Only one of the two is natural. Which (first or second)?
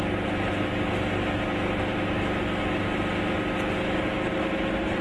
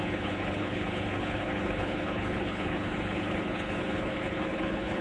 first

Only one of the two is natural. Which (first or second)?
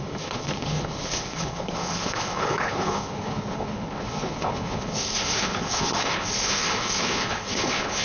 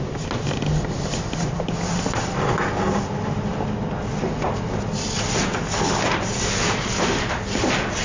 second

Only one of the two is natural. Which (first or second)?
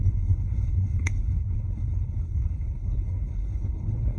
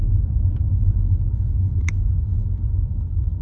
second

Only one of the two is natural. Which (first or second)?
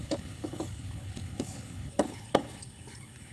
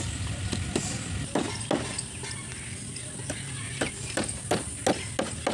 second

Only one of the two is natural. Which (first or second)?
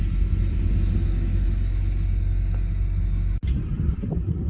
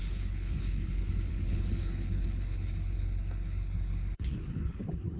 first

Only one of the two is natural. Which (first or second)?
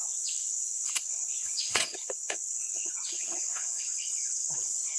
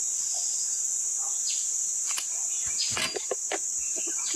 second